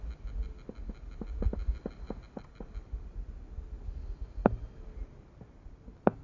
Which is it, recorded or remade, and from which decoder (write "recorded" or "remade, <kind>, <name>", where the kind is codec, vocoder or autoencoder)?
recorded